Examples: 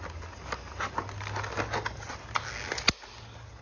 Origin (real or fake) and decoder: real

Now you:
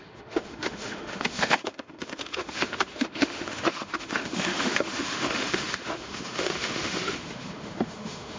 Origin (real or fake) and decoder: fake, autoencoder, DAC-VAE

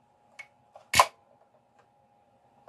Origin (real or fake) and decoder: real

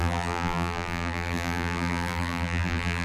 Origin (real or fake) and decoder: fake, vocoder, BigVGAN v2